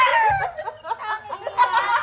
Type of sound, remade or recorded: recorded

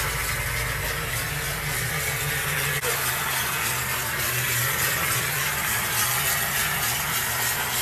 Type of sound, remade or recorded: recorded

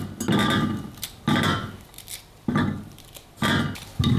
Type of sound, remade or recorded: recorded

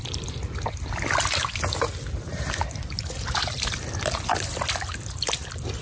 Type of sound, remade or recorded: recorded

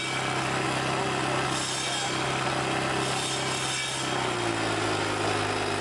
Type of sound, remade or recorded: recorded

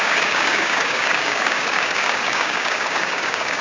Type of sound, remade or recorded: remade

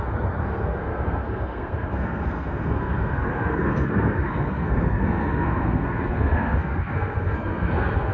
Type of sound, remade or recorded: remade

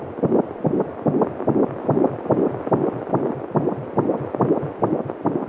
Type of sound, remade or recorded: recorded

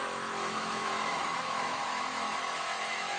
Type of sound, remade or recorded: remade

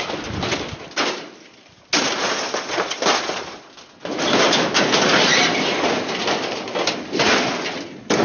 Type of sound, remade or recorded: recorded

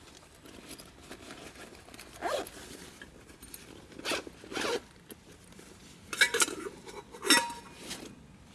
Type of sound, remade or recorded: recorded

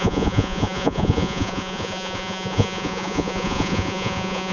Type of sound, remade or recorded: remade